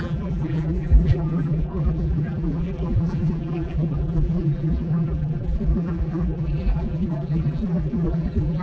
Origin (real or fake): fake